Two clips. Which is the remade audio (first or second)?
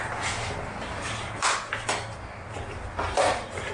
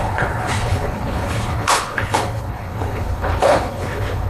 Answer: second